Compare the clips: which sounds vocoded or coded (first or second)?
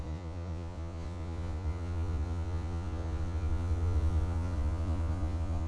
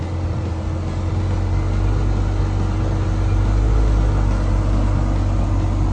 first